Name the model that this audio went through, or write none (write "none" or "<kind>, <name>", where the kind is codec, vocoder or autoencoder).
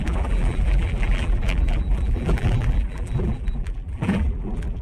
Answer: vocoder, BigVGAN v2